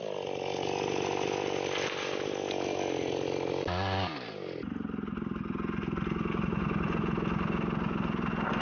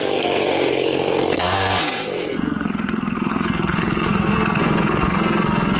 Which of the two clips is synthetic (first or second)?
second